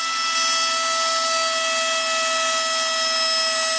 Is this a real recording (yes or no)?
yes